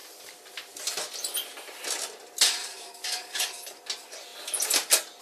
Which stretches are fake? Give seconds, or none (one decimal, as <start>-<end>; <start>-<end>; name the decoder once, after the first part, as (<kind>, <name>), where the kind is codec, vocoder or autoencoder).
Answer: 2.6-3.8 (codec, DAC)